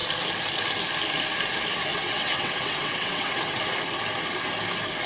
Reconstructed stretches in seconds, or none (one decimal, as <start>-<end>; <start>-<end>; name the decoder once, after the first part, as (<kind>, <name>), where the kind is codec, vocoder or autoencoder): 1.9-3.6 (vocoder, WaveNeXt)

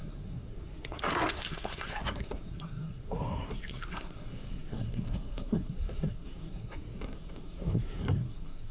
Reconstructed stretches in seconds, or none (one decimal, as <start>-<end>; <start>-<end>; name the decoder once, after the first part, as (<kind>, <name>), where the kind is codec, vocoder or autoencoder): 0.0-8.7 (codec, SNAC)

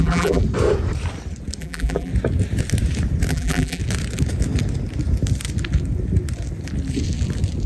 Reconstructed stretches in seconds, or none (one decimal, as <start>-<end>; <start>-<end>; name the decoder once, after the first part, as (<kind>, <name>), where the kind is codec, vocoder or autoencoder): 0.0-0.4 (vocoder, BigVGAN v2); 1.6-2.1; 3.3-3.8

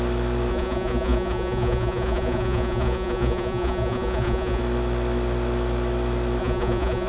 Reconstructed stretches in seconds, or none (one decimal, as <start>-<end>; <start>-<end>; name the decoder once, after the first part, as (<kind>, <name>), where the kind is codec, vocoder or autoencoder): 0.5-4.6 (vocoder, Vocos); 6.4-7.1

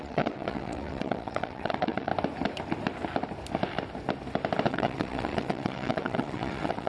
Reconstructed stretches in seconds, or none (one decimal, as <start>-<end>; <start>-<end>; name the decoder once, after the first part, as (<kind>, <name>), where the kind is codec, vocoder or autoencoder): 0.0-2.1 (vocoder, WaveNeXt); 4.7-6.9

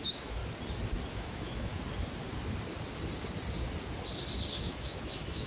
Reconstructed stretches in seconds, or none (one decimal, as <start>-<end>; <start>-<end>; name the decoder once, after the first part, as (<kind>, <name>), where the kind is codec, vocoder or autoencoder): 0.0-0.4 (autoencoder, DAC-VAE); 1.1-1.7; 4.6-5.5